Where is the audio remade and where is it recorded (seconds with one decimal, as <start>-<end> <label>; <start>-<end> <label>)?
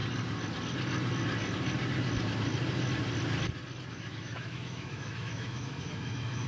0.0-3.9 recorded; 3.9-6.5 remade